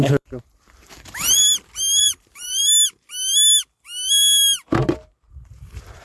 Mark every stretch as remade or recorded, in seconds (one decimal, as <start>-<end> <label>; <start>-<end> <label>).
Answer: 0.0-1.4 remade; 1.4-2.0 recorded; 2.0-2.6 remade; 2.6-5.3 recorded; 5.3-6.0 remade